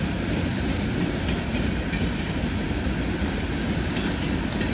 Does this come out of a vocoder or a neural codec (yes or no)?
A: no